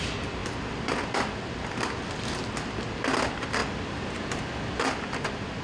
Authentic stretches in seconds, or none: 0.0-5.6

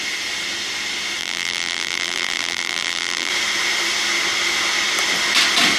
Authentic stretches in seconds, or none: 0.0-1.2; 3.3-5.8

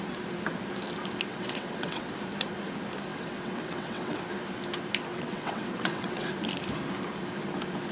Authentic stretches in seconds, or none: 0.0-1.3; 2.1-3.1; 4.2-5.1; 6.3-7.9